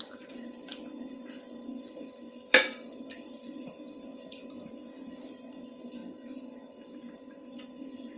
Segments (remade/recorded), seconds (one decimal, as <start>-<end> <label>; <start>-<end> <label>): 0.0-4.4 remade; 4.4-5.6 recorded; 5.6-6.0 remade; 6.0-7.5 recorded; 7.5-8.2 remade